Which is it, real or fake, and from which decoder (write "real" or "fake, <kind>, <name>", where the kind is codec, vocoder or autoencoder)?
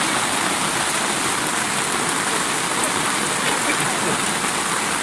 real